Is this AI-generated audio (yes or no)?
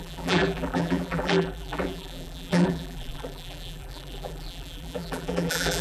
yes